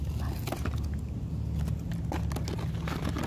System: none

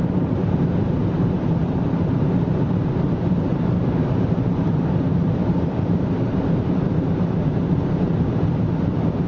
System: vocoder, BigVGAN v2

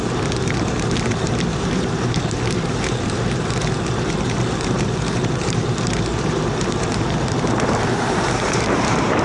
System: vocoder, BigVGAN v2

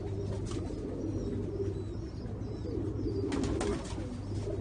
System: none